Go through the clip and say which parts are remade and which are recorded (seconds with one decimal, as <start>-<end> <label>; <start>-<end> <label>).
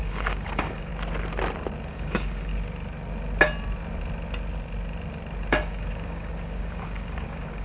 0.0-0.9 remade; 0.9-1.9 recorded; 1.9-2.5 remade; 2.5-5.5 recorded; 5.5-7.6 remade